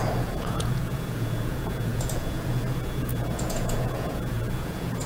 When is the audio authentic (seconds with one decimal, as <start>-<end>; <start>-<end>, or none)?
none